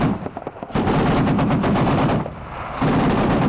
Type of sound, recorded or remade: recorded